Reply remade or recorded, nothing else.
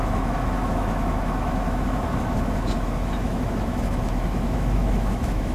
remade